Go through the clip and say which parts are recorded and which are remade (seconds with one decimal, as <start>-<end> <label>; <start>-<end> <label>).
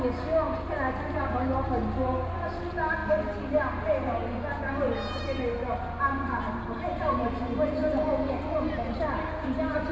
0.0-9.9 recorded